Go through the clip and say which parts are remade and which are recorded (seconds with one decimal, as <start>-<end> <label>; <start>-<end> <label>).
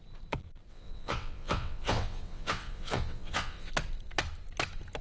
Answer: 0.0-0.7 recorded; 0.7-3.7 remade; 3.7-5.0 recorded